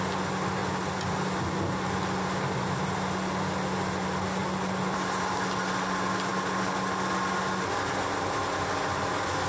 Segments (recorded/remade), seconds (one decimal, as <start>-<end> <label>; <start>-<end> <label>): 0.0-9.5 recorded